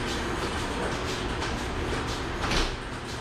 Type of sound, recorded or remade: recorded